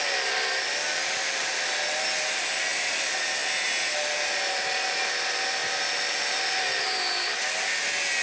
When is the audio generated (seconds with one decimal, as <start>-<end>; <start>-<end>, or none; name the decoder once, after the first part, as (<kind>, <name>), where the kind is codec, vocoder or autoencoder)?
none

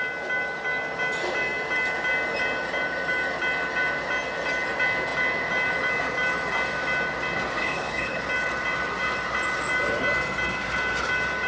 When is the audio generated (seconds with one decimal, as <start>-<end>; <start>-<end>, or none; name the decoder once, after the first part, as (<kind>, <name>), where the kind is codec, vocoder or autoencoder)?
7.6-8.2 (codec, HILCodec)

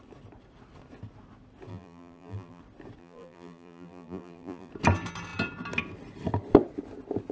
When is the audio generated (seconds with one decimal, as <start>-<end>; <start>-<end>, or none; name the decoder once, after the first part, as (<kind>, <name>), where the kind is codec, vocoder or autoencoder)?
1.7-2.6 (vocoder, BigVGAN v2); 3.0-4.7